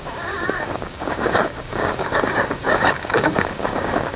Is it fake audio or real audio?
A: fake